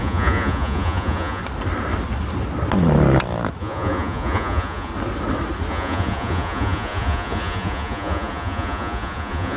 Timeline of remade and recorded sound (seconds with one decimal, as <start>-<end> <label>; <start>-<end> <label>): 0.0-1.4 remade; 1.4-3.6 recorded; 3.6-4.9 remade; 4.9-5.7 recorded; 5.7-9.6 remade